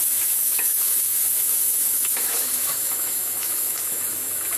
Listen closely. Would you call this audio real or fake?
fake